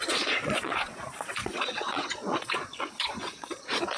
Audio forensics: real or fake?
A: fake